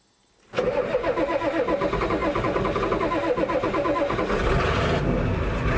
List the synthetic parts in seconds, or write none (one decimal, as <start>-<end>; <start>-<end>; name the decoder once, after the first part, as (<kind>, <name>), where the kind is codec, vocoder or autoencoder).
none